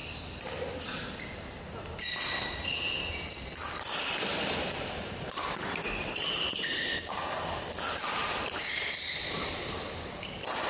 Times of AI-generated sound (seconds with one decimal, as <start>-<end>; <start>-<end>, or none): 4.3-7.2; 8.2-9.5